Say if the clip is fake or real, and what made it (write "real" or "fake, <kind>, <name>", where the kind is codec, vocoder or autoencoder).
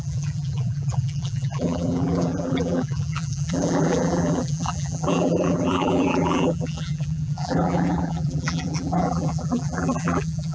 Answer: fake, vocoder, BigVGAN v2